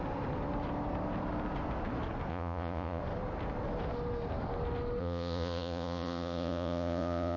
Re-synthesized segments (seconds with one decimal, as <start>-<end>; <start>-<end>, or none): 2.3-3.0; 5.0-7.4